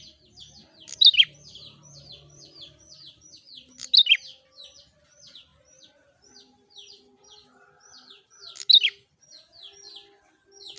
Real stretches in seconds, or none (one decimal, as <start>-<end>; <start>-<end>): 0.0-10.8